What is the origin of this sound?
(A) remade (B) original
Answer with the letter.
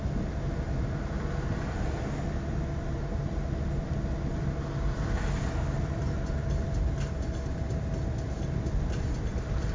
B